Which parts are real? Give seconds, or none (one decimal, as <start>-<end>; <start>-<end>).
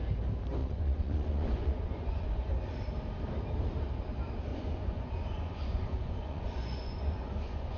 0.0-0.6; 2.5-4.5